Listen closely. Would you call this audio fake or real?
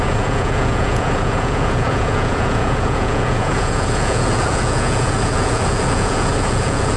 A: fake